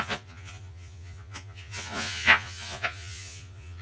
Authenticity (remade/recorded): remade